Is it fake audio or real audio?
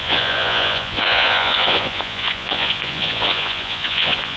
fake